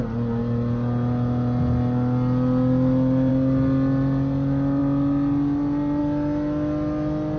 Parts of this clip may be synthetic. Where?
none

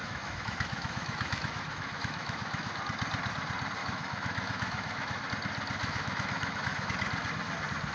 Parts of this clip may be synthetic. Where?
0.0-2.8 (autoencoder, DAC-VAE); 3.8-5.2; 5.8-6.9

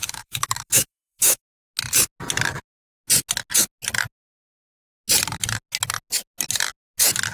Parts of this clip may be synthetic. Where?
0.0-1.4 (autoencoder, DAC-VAE)